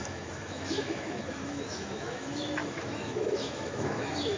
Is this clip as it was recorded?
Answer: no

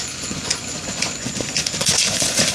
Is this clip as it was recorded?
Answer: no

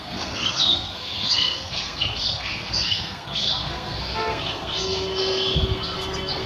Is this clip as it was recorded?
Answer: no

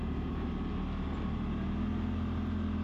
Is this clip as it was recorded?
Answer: yes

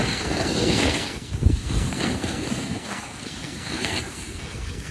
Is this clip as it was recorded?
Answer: no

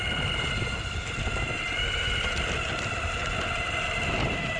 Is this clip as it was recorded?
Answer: yes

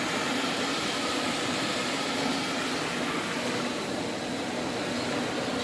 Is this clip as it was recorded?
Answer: yes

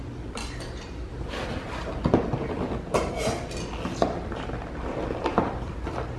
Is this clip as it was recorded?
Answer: yes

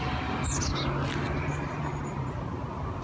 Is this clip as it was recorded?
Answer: yes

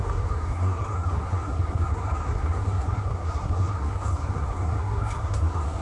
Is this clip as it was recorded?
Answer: no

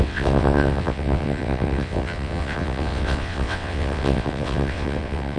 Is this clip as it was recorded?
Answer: no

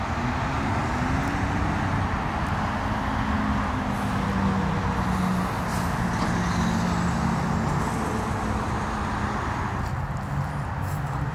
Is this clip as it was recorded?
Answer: yes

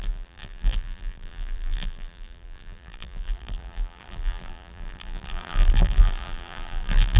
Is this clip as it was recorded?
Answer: no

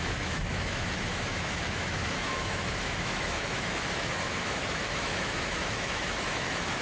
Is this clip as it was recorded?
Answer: no